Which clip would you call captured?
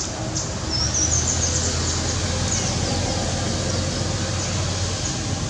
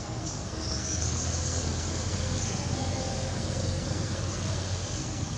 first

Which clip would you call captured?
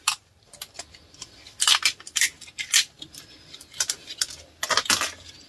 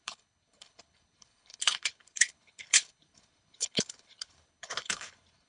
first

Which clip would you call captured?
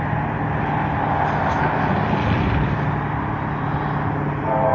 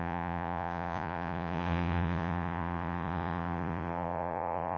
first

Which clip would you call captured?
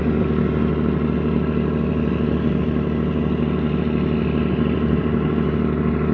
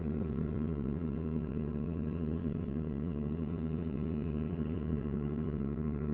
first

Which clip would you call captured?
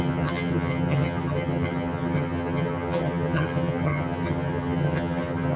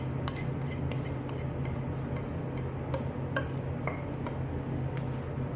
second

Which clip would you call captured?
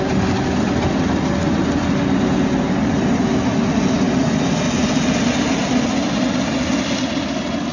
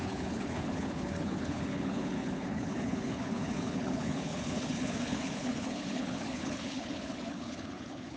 first